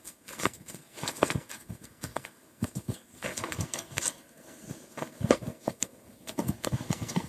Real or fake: fake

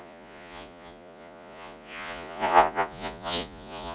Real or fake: fake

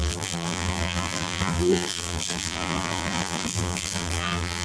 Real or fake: fake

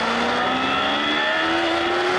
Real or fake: real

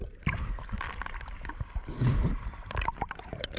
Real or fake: fake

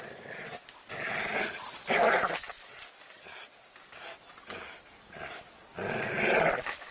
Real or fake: real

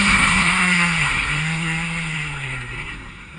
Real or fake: fake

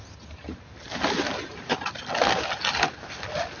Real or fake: real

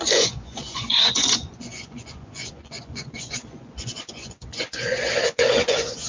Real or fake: fake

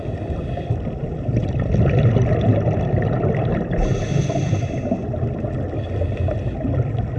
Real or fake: real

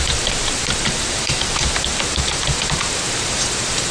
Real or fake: fake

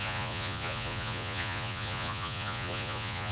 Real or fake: fake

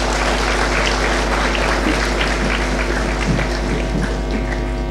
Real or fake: real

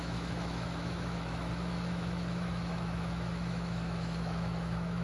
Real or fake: fake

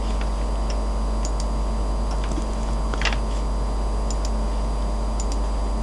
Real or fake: real